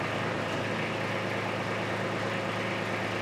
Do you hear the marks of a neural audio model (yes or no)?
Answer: no